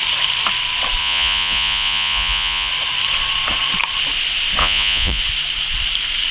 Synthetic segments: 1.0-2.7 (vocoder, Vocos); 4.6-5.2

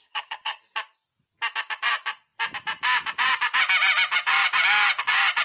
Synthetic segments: 0.0-0.6 (vocoder, HiFi-GAN)

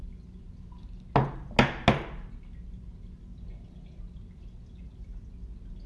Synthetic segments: none

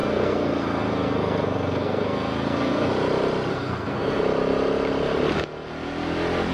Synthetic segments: 0.0-2.9 (codec, SNAC); 3.5-4.2

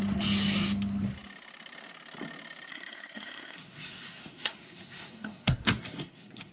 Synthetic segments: 2.7-6.5 (codec, SNAC)

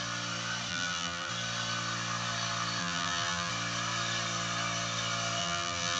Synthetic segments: 0.7-1.3 (vocoder, BigVGAN v2); 2.8-3.5; 5.4-6.0

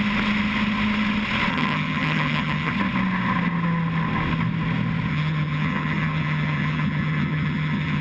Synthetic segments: 1.5-2.7 (vocoder, HiFi-GAN); 5.1-8.0

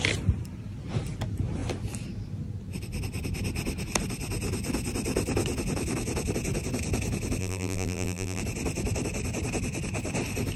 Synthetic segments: 7.4-8.4 (vocoder, BigVGAN v2)